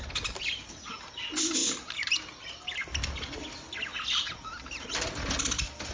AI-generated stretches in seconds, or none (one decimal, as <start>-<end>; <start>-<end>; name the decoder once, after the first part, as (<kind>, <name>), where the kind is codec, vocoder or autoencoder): none